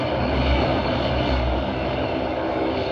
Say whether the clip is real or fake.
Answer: fake